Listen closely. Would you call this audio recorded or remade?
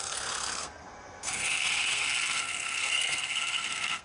remade